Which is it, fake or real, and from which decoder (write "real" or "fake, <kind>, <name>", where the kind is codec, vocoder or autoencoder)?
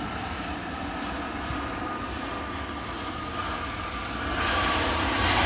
real